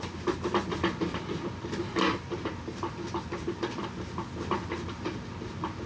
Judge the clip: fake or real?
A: real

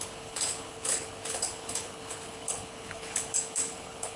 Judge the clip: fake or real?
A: fake